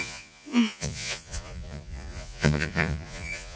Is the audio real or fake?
fake